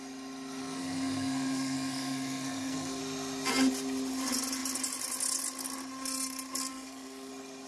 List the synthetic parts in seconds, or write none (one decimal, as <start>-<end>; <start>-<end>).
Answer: 0.6-3.0; 6.7-7.3

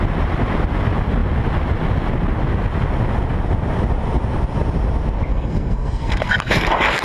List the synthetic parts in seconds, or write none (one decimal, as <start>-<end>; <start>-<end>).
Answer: 5.3-7.0